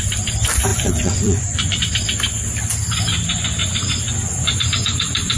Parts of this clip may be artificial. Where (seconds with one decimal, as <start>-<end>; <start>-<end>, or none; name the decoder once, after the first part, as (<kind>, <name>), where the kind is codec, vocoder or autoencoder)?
0.7-1.8 (vocoder, Vocos); 3.6-5.4